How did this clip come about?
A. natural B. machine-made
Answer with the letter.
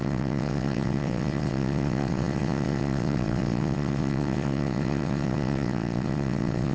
B